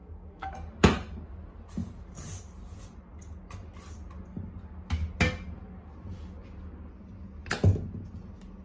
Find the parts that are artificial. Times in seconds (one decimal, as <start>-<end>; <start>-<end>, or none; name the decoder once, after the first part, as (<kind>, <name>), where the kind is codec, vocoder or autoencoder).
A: 0.0-0.5 (codec, SNAC)